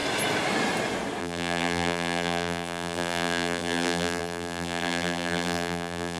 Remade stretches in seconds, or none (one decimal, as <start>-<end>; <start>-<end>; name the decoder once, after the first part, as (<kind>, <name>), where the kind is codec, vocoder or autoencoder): 1.2-6.2 (vocoder, BigVGAN v2)